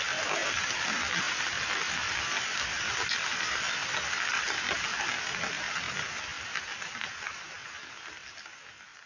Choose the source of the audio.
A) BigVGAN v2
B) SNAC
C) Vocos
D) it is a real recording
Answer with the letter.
D